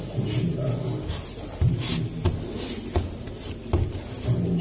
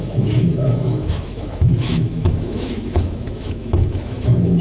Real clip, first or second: first